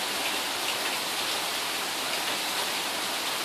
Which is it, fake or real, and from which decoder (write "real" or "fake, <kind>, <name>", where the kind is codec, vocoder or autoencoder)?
real